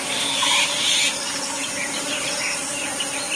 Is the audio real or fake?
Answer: real